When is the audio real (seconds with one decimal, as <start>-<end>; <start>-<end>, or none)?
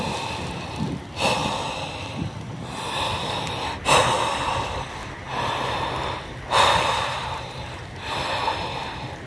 0.0-5.0; 5.7-6.9; 8.1-9.3